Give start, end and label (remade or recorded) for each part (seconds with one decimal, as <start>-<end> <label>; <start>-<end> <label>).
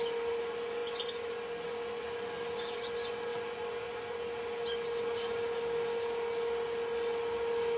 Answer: 0.0-7.8 recorded